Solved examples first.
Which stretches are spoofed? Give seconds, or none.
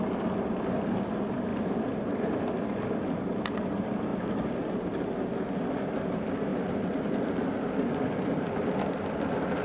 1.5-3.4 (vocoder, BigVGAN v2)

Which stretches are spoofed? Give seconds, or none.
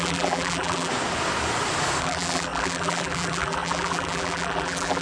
0.0-0.9 (vocoder, BigVGAN v2); 2.0-5.0